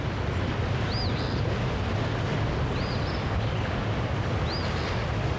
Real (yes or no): yes